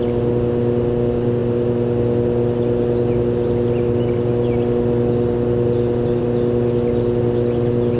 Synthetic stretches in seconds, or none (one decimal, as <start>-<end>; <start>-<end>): none

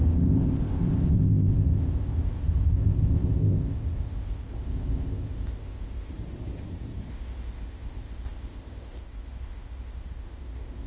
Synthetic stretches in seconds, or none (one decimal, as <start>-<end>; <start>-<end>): 0.0-6.1; 7.1-10.9

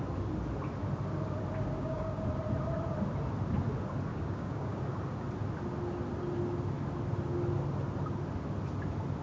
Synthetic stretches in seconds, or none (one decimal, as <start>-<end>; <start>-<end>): 1.6-2.3; 4.1-4.8